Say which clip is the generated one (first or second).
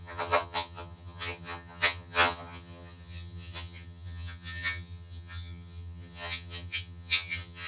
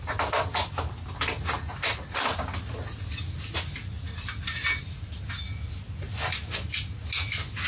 first